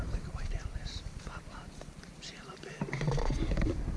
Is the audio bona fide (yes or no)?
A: no